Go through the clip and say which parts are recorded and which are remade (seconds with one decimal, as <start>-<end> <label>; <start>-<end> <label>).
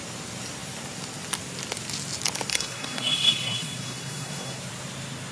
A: 0.0-2.5 recorded; 2.5-4.6 remade; 4.6-5.3 recorded